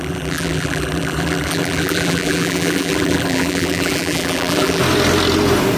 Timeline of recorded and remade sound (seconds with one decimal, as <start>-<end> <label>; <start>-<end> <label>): 0.0-4.8 remade; 4.8-5.8 recorded